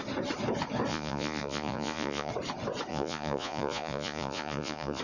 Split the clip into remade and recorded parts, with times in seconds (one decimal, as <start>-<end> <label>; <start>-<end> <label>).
0.0-0.9 recorded; 0.9-2.3 remade; 2.3-2.9 recorded; 2.9-5.0 remade